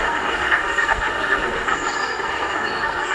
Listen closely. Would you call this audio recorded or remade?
remade